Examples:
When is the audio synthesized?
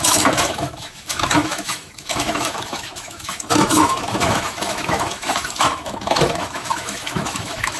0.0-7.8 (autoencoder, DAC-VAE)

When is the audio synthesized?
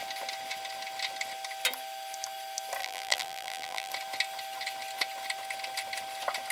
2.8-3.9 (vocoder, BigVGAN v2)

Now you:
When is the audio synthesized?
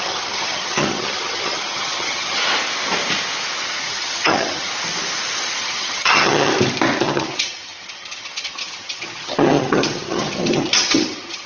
0.0-2.4 (vocoder, HiFi-GAN); 3.8-4.7; 5.6-6.5; 7.0-11.5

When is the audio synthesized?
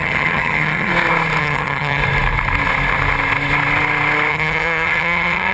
0.0-0.9 (vocoder, HiFi-GAN); 1.4-2.0; 4.3-5.5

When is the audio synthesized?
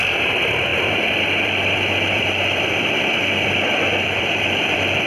0.0-5.1 (vocoder, BigVGAN v2)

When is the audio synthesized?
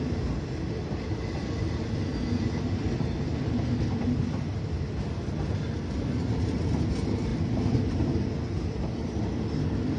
none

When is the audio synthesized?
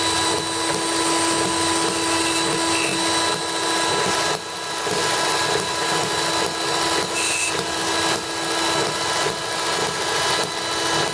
none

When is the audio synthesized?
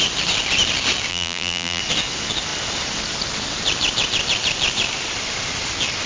1.1-1.8 (vocoder, BigVGAN v2)